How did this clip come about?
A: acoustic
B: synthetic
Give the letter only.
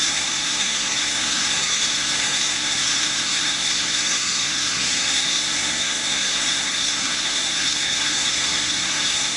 B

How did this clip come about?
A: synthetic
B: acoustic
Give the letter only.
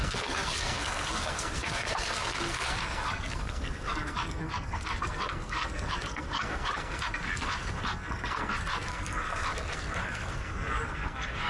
A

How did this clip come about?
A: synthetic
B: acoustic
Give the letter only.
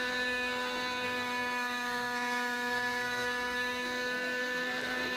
A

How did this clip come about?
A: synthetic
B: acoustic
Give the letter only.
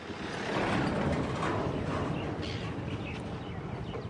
B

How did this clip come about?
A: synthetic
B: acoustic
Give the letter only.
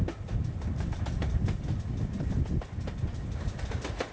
B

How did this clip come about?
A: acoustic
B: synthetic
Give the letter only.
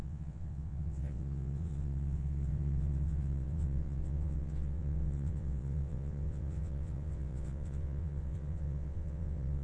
B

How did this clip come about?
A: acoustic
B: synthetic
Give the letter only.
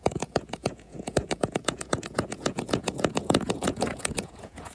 B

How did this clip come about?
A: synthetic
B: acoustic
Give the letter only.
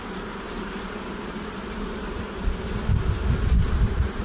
A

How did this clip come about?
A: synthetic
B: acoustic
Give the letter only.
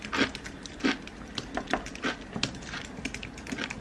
B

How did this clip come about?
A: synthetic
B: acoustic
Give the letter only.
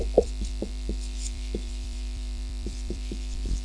A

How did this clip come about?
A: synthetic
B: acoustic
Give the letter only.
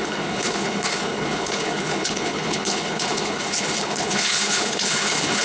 A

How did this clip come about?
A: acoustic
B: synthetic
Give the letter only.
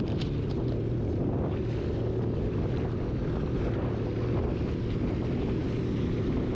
A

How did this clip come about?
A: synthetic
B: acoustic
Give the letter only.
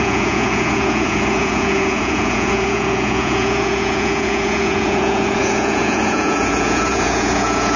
A